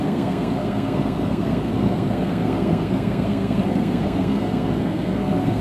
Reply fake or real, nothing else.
fake